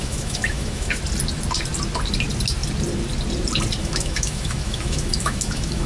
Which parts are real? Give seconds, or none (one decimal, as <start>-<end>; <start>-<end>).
1.0-3.8